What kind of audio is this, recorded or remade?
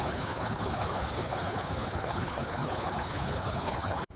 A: remade